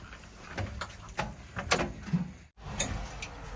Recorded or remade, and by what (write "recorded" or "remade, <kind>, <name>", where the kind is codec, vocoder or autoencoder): recorded